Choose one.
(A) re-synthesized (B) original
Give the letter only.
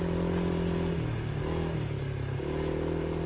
B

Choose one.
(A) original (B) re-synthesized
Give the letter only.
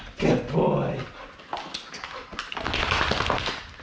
A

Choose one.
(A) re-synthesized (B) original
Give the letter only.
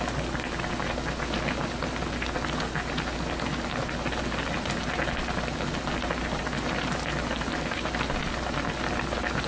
B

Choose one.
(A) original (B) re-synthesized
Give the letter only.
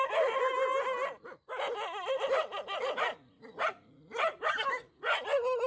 A